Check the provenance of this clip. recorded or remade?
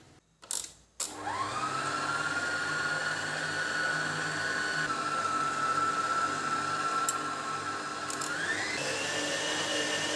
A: recorded